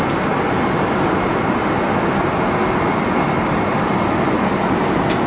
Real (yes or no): yes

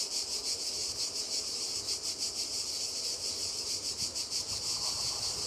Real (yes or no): yes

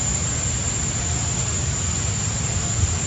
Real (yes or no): yes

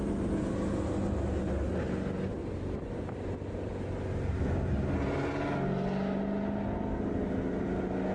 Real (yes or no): yes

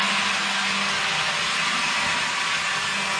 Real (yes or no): yes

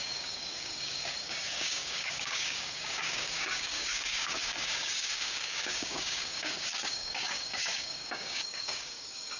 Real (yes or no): no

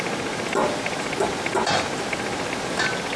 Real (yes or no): yes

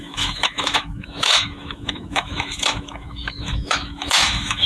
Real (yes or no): no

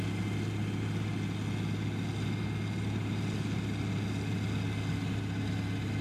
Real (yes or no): yes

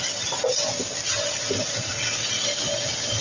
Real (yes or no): yes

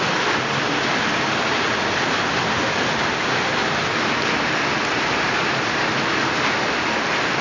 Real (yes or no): yes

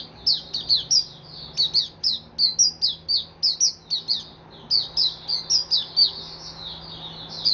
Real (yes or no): yes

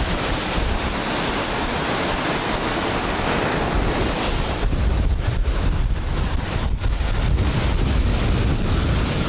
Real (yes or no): yes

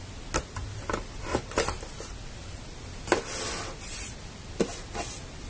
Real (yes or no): yes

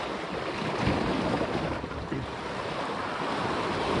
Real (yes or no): yes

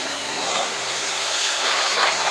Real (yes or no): no